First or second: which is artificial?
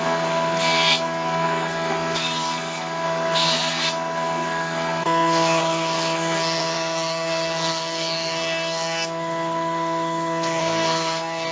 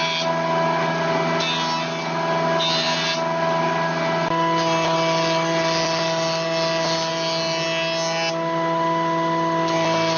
first